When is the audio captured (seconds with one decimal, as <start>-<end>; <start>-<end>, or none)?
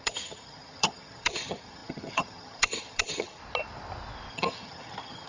3.4-4.3